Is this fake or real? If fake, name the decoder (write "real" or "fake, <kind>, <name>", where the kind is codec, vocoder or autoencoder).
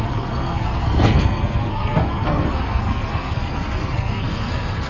fake, codec, SNAC